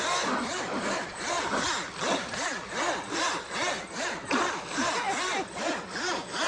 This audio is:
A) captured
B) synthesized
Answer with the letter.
A